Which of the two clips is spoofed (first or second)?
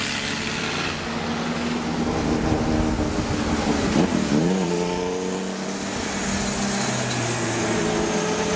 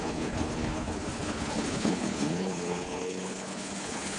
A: second